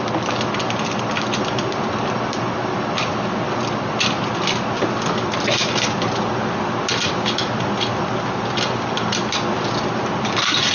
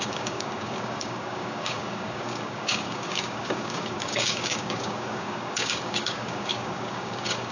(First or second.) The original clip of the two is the first